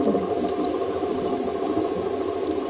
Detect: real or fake real